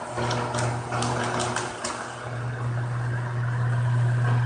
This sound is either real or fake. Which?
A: real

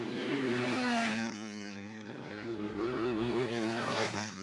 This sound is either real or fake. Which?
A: fake